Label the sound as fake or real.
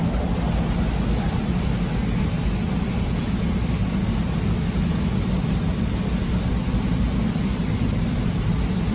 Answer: real